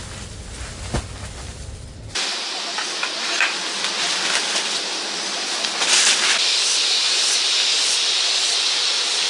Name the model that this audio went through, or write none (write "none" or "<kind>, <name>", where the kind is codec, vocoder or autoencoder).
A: none